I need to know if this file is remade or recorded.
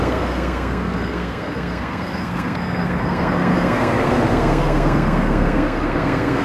remade